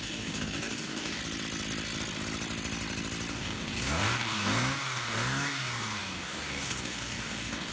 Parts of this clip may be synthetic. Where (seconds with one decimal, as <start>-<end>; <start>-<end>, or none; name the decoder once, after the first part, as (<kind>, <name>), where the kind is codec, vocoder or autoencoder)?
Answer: 0.0-1.2 (codec, DAC); 3.3-7.7